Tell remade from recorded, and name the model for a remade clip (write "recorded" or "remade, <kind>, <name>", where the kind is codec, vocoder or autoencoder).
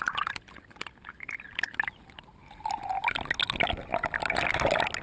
recorded